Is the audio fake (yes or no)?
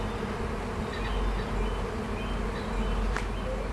no